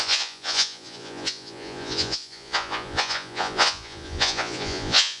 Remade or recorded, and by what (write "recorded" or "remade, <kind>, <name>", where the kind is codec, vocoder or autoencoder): remade, vocoder, Vocos